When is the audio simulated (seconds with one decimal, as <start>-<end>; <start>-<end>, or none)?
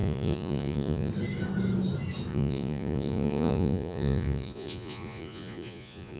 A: 0.0-1.1; 2.3-6.2